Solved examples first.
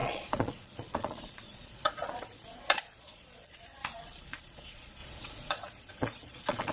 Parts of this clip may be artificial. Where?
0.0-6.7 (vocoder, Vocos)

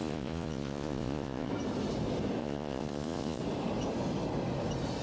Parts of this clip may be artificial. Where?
0.0-1.5 (vocoder, Vocos); 2.4-3.4